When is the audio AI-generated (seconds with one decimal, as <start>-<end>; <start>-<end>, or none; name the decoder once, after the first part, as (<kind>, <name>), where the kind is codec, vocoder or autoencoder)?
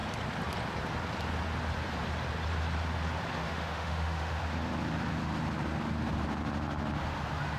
3.4-4.4 (autoencoder, DAC-VAE)